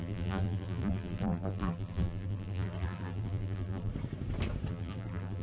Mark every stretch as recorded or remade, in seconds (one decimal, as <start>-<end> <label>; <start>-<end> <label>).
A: 0.0-3.9 remade; 3.9-4.7 recorded; 4.7-5.4 remade